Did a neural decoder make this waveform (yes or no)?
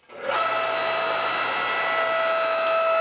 no